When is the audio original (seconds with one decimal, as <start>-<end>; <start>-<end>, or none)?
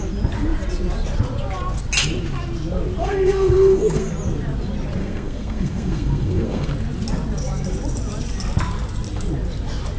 0.0-3.0; 4.1-5.0; 6.7-10.0